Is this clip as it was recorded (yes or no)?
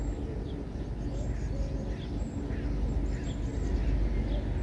yes